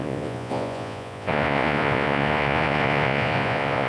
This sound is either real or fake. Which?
fake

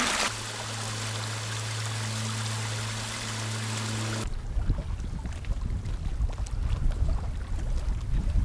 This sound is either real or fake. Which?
real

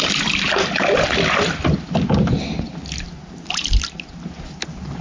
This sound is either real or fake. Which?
real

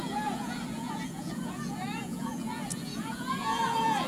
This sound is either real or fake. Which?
fake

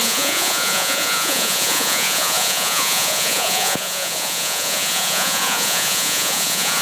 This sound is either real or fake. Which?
fake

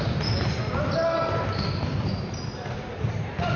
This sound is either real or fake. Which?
real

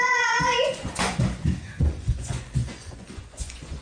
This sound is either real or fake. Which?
fake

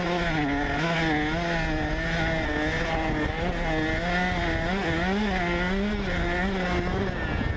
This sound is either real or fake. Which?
real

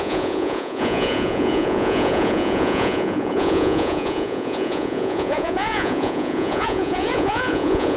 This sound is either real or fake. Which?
fake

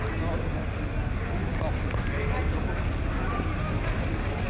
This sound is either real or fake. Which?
real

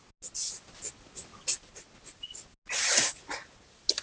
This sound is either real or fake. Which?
real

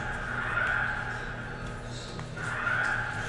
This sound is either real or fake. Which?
real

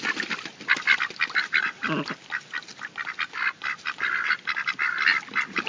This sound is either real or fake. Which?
real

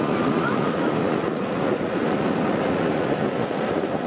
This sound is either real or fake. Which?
fake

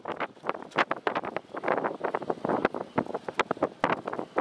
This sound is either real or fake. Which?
real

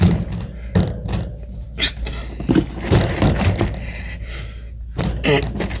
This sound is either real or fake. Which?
real